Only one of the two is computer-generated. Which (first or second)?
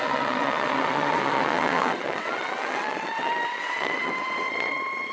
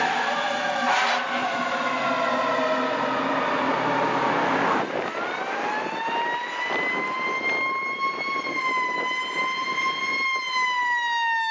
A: first